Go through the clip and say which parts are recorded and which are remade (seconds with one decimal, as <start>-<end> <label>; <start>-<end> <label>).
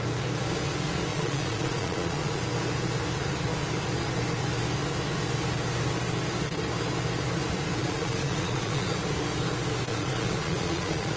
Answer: 0.0-1.1 recorded; 1.1-2.4 remade; 2.4-7.8 recorded; 7.8-8.9 remade; 8.9-9.9 recorded; 9.9-11.2 remade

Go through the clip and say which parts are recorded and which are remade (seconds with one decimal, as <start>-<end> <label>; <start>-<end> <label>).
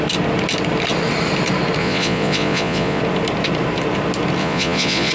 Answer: 0.0-1.8 recorded; 1.8-3.0 remade; 3.0-4.4 recorded; 4.4-5.1 remade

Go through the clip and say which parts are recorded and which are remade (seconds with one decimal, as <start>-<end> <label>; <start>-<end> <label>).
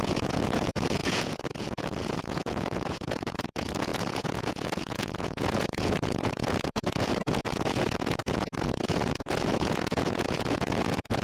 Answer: 0.0-11.2 remade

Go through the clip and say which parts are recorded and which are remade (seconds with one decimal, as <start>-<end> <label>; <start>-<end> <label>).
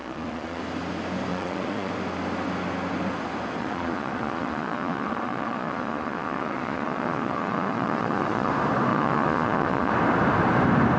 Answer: 0.0-0.6 remade; 0.6-1.3 recorded; 1.3-1.9 remade; 1.9-3.6 recorded; 3.6-8.5 remade; 8.5-8.9 recorded; 8.9-9.9 remade; 9.9-11.0 recorded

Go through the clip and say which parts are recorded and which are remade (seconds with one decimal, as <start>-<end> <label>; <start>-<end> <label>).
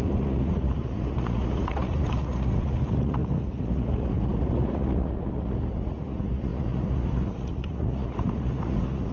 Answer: 0.0-9.1 remade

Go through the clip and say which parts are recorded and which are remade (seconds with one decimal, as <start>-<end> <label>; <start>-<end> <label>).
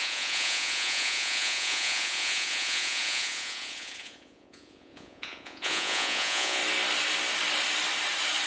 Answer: 0.0-6.6 remade; 6.6-8.5 recorded